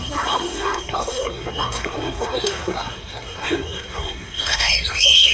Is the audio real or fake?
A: fake